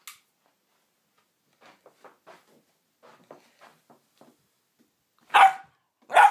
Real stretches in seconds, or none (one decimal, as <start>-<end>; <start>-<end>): 0.0-6.3